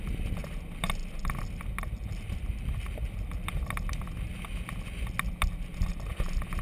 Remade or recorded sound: recorded